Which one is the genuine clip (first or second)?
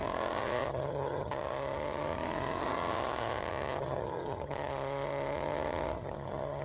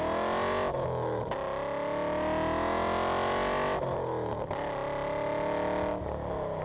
second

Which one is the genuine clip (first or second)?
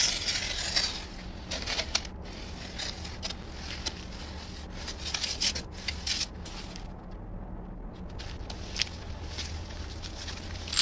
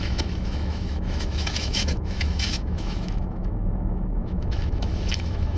first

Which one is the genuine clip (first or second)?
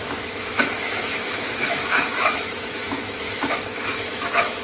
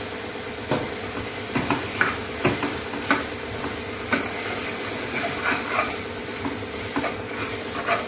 second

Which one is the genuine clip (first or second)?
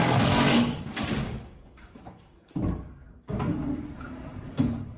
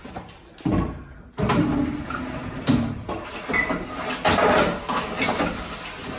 second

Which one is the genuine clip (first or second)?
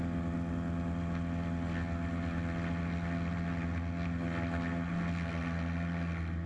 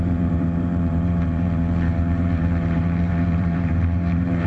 first